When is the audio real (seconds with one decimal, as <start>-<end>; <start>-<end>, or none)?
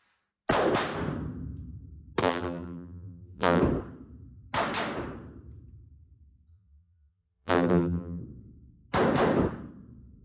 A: 0.0-2.2; 3.6-6.5; 8.2-10.2